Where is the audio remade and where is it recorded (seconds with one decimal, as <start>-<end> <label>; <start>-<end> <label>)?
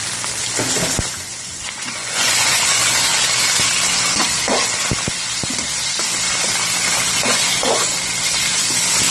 0.0-1.2 recorded; 1.2-3.1 remade; 3.1-7.1 recorded; 7.1-7.9 remade; 7.9-9.1 recorded